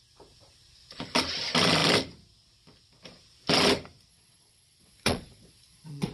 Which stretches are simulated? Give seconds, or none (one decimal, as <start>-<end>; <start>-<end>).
4.1-6.1